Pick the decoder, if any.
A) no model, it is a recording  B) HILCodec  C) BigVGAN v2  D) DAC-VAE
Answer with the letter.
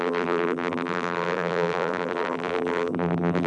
C